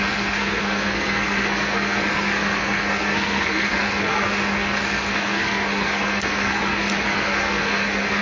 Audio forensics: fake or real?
fake